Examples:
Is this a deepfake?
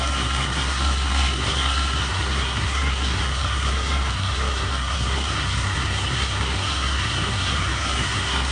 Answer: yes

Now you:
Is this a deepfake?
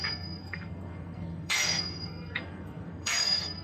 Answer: yes